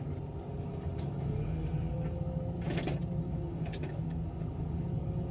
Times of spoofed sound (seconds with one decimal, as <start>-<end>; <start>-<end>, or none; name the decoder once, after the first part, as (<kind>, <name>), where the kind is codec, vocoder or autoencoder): 0.5-2.4 (codec, DAC); 3.2-5.3